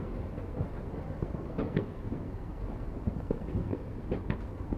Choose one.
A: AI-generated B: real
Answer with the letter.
A